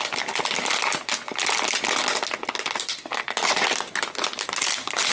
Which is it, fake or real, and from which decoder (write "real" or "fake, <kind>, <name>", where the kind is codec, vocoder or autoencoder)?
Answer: real